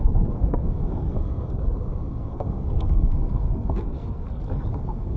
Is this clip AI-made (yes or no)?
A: yes